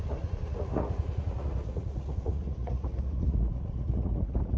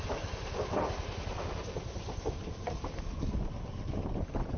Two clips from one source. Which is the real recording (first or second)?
second